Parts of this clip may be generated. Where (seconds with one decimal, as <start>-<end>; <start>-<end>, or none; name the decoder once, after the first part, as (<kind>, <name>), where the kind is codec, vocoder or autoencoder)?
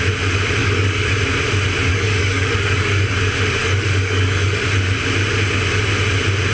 0.6-1.1 (codec, DAC); 1.9-3.1; 3.6-4.6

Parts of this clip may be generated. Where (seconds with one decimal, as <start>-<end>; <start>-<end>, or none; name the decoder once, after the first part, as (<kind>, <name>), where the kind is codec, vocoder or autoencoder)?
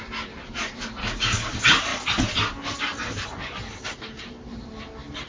1.0-1.5 (codec, DAC)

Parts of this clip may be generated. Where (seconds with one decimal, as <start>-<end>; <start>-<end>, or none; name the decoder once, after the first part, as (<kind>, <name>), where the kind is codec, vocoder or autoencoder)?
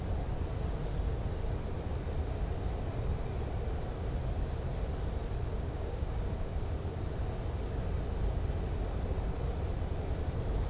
5.5-6.9 (codec, DAC)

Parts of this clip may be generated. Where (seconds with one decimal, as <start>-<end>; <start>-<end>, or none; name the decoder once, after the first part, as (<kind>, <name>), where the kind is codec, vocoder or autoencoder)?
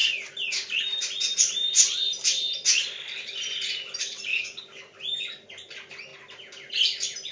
4.3-4.8 (codec, DAC)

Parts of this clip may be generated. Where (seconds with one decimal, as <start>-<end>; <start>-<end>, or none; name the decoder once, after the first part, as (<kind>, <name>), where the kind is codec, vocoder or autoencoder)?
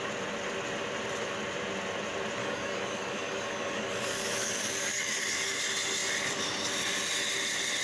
2.4-5.6 (codec, DAC)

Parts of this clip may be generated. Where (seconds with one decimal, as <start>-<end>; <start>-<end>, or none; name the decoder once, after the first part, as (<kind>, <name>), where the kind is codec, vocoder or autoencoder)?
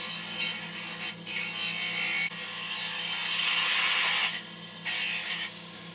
5.2-5.9 (codec, DAC)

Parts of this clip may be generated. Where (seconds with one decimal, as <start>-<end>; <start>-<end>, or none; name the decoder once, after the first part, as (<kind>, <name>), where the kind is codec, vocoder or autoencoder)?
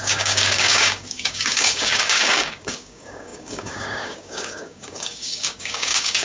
0.0-6.2 (codec, DAC)